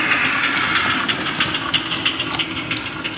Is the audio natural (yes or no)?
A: yes